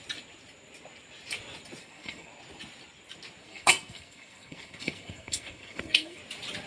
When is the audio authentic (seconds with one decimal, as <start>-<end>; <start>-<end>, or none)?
0.0-1.8; 2.3-3.4; 6.2-6.7